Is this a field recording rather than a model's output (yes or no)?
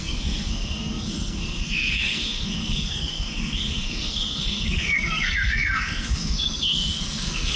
no